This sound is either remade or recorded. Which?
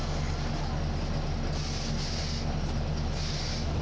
recorded